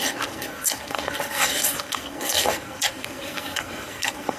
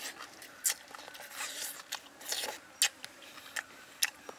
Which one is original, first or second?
second